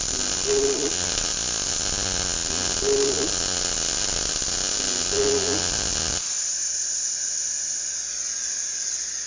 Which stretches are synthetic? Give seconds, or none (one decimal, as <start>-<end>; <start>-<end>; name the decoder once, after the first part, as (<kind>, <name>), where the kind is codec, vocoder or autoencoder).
none